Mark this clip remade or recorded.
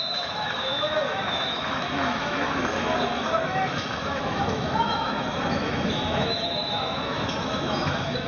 remade